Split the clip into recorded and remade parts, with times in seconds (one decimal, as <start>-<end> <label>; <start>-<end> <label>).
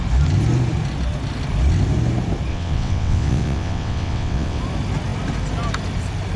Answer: 0.0-2.5 recorded; 2.5-4.6 remade; 4.6-6.4 recorded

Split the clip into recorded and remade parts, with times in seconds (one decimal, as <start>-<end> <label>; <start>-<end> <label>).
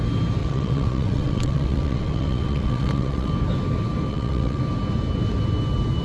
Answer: 0.0-0.4 recorded; 0.4-3.3 remade; 3.3-4.1 recorded; 4.1-4.6 remade; 4.6-6.0 recorded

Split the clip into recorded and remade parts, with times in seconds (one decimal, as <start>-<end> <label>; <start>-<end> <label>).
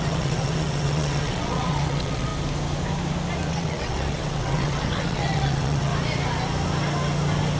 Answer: 0.0-2.3 remade; 2.3-3.5 recorded; 3.5-5.9 remade; 5.9-7.6 recorded